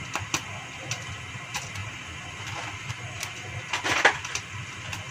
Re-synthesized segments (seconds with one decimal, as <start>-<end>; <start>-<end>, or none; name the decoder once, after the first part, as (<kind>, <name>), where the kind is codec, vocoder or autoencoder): none